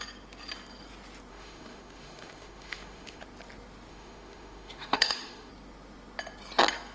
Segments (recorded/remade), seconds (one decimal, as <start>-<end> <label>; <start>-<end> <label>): 0.0-1.3 recorded; 1.3-3.2 remade; 3.2-3.9 recorded; 3.9-5.5 remade; 5.5-6.9 recorded